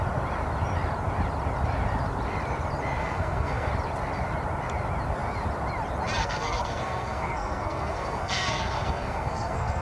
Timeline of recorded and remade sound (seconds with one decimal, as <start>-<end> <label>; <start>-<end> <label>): 0.0-3.0 recorded; 3.0-3.7 remade; 3.7-6.2 recorded; 6.2-9.8 remade